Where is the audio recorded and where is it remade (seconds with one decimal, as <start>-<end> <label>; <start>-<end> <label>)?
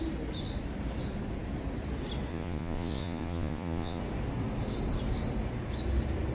0.0-2.3 recorded; 2.3-4.0 remade; 4.0-6.3 recorded